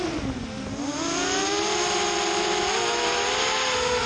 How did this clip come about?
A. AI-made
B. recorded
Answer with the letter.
B